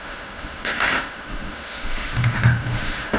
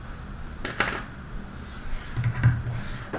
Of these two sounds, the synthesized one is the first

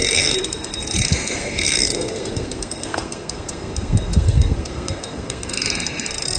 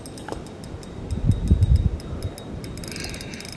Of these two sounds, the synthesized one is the first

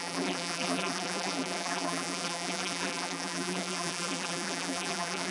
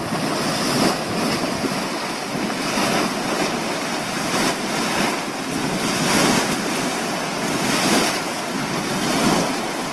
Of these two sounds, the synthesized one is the first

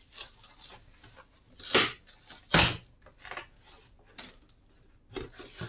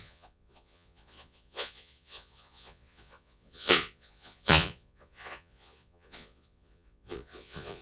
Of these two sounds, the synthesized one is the second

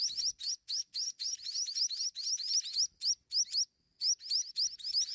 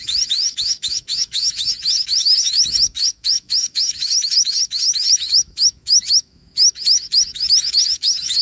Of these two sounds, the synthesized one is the second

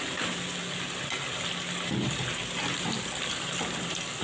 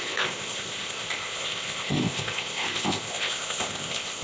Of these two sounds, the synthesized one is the second